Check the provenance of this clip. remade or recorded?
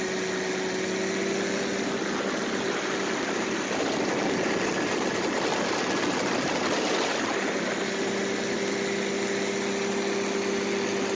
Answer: recorded